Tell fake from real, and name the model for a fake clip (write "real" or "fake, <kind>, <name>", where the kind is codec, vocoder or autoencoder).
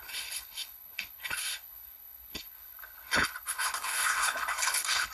fake, codec, HILCodec